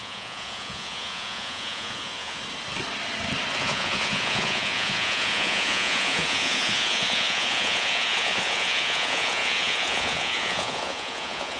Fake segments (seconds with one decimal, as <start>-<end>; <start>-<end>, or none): 0.0-2.4; 3.6-11.6